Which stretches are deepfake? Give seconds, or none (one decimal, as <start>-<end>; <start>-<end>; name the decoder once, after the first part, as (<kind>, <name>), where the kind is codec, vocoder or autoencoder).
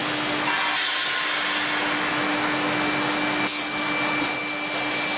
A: none